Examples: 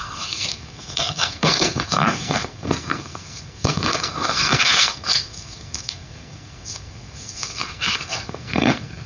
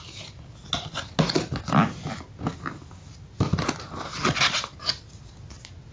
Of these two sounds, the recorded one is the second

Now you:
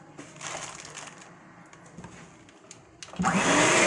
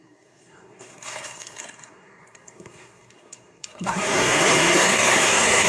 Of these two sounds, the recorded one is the first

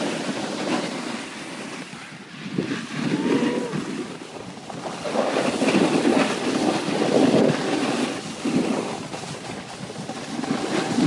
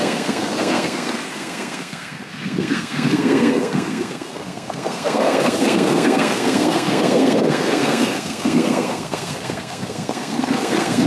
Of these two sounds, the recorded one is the first